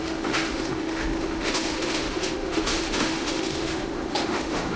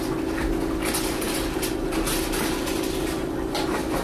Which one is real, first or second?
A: second